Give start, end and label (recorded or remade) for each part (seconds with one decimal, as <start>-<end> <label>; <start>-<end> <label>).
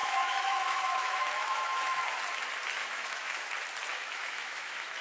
0.0-2.0 remade; 2.0-2.8 recorded; 2.8-3.5 remade; 3.5-3.9 recorded; 3.9-5.0 remade